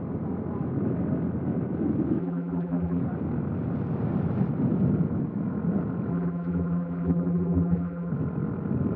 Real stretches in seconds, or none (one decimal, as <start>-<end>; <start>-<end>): 0.0-2.2; 3.0-6.1; 8.1-9.0